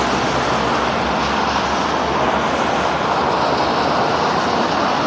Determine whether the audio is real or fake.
real